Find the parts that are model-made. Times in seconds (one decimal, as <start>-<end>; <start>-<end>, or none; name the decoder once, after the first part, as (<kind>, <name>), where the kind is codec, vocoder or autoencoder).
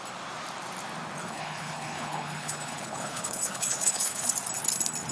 1.2-4.3 (codec, HILCodec)